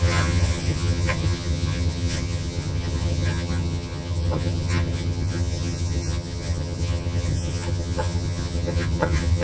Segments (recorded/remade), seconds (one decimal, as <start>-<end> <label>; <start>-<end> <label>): 0.0-9.4 remade